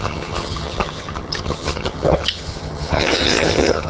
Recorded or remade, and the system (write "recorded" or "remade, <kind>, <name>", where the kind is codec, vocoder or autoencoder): remade, vocoder, HiFi-GAN